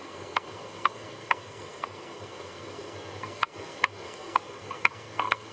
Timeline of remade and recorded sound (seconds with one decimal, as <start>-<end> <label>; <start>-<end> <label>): 0.0-5.5 remade